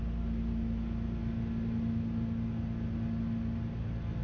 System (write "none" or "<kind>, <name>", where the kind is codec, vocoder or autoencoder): none